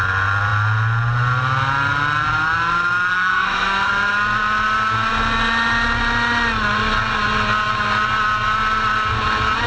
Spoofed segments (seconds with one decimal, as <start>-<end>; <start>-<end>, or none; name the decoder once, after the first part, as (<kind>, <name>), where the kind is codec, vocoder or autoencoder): 3.1-3.9 (codec, SNAC)